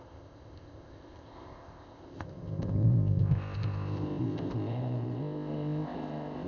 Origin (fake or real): fake